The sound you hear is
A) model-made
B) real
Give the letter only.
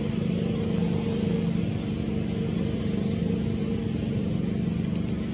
B